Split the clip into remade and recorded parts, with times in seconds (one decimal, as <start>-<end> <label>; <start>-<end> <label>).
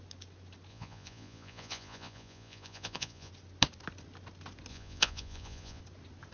0.0-0.7 recorded; 0.7-3.3 remade; 3.3-4.7 recorded; 4.7-5.8 remade; 5.8-6.3 recorded